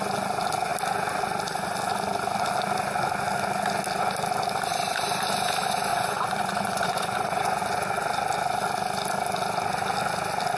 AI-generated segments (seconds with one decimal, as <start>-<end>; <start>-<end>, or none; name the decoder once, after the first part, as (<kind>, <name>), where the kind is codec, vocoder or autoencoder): 5.9-7.6 (vocoder, Vocos)